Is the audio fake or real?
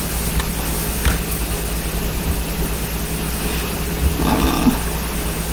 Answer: real